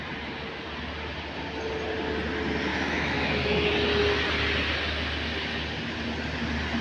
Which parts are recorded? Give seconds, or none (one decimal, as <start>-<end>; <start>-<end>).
0.0-2.7; 3.7-6.8